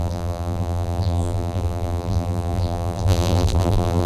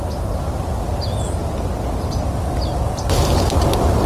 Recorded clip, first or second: second